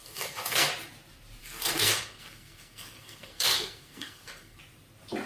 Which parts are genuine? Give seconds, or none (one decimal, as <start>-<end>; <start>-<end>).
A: 0.7-1.4; 4.6-5.3